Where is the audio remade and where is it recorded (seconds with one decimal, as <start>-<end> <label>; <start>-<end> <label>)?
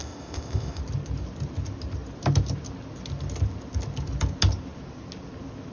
0.0-0.8 remade; 0.8-5.7 recorded